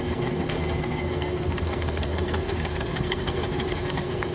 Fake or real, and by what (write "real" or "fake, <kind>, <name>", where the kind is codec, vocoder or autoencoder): fake, codec, SNAC